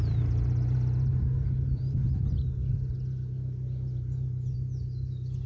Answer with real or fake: real